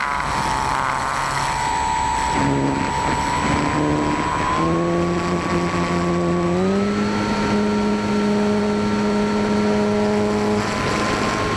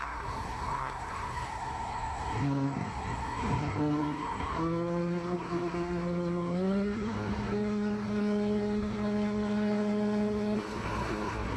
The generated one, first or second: second